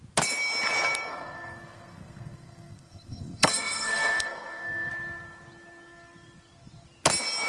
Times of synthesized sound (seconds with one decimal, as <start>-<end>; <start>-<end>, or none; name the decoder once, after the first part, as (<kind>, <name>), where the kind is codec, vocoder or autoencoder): 1.1-4.9 (codec, SNAC)